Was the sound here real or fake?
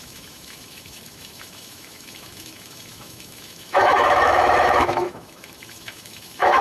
fake